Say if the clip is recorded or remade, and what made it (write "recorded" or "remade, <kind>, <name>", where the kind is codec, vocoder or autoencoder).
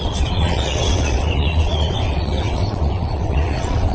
remade, vocoder, WaveNeXt